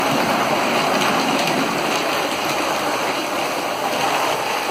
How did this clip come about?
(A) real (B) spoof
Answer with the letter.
A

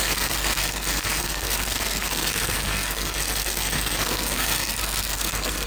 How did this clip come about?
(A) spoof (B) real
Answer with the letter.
A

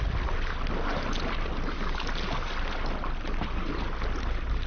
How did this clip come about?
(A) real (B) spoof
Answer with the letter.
A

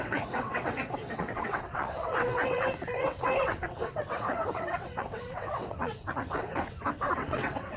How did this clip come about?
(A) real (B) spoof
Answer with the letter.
B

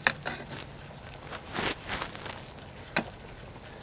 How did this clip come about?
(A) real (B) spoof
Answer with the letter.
A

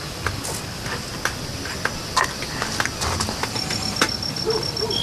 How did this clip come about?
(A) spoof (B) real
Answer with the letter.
B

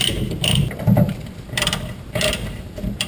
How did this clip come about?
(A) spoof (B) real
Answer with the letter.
A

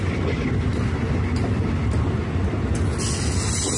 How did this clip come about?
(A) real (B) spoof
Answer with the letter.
A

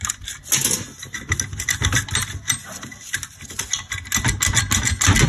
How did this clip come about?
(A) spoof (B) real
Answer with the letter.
B